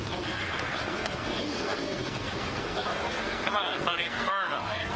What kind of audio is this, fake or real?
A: fake